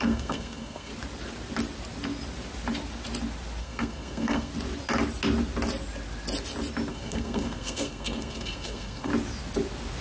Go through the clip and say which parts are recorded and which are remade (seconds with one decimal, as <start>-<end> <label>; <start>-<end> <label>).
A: 0.0-0.9 remade; 0.9-3.6 recorded; 3.6-4.5 remade; 4.5-6.9 recorded; 6.9-9.1 remade; 9.1-10.0 recorded